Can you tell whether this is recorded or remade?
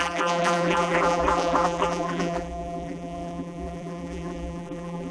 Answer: remade